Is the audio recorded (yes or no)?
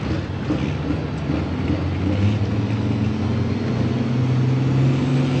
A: yes